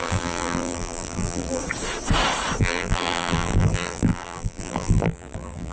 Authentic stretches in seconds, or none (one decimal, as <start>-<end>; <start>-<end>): 1.6-2.6